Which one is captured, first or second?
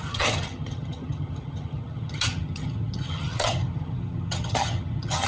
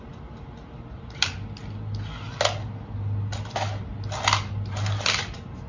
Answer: second